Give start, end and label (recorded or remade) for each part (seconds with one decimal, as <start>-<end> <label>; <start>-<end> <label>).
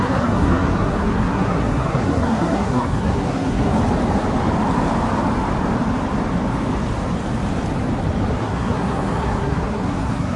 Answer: 0.0-3.8 remade; 3.8-8.3 recorded; 8.3-10.4 remade